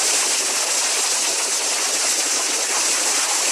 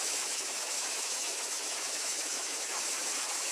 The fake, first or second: second